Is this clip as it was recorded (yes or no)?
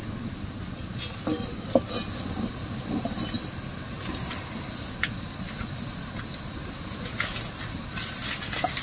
yes